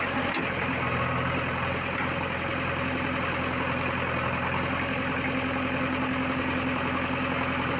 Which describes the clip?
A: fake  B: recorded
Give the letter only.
B